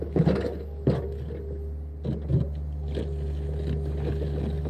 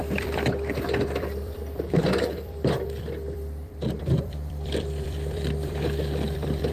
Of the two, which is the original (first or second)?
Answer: first